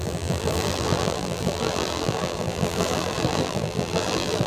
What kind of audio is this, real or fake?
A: fake